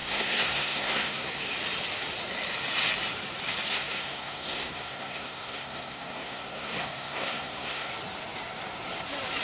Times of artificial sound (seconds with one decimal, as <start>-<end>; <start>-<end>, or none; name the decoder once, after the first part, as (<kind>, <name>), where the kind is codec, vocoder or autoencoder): 0.0-1.5 (codec, SNAC); 3.7-7.9